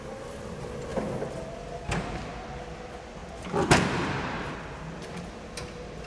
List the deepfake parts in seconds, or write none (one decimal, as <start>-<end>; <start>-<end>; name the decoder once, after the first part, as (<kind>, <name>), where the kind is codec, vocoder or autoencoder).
none